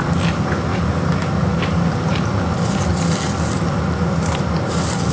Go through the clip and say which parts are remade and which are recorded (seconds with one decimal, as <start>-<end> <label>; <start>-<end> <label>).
0.0-5.1 recorded

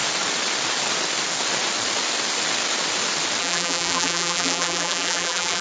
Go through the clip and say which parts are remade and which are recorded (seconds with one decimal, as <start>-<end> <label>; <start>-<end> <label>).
0.0-3.4 recorded; 3.4-5.6 remade

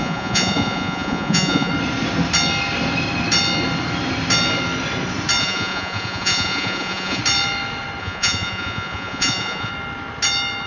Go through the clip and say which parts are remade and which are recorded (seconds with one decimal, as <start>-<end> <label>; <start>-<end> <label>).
0.0-1.7 remade; 1.7-5.4 recorded; 5.4-7.2 remade; 7.2-8.0 recorded; 8.0-9.7 remade; 9.7-10.7 recorded

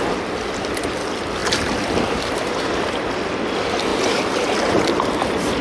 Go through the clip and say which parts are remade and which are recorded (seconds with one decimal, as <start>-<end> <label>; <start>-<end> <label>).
0.0-1.4 recorded; 1.4-2.5 remade; 2.5-5.6 recorded

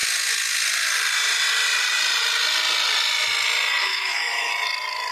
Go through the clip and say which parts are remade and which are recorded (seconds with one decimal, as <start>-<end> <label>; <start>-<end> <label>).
0.0-3.8 recorded; 3.8-4.5 remade; 4.5-5.1 recorded

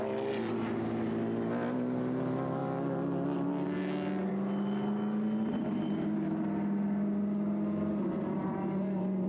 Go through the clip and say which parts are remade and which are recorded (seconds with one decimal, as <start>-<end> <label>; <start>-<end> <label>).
0.0-9.3 recorded